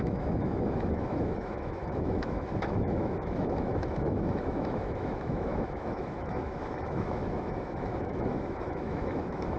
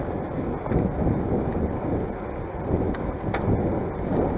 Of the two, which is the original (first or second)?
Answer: second